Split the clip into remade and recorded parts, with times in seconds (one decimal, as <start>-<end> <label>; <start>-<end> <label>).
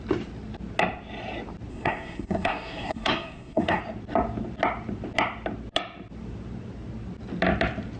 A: 0.0-1.7 recorded; 1.7-3.8 remade; 3.8-8.0 recorded